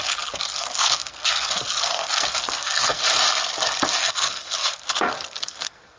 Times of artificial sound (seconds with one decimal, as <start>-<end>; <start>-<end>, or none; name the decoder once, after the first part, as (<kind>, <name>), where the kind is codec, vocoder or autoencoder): 0.0-3.0 (codec, SNAC); 4.0-6.0